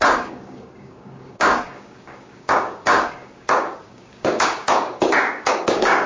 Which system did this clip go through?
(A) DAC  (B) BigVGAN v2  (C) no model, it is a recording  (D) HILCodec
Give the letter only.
A